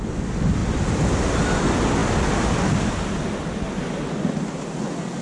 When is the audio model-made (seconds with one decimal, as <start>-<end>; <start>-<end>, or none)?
none